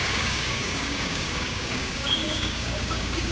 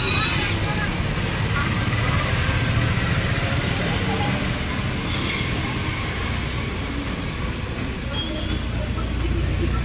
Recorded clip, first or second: second